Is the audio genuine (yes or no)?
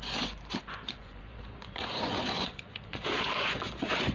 no